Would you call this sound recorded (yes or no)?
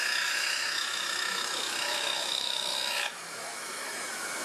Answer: no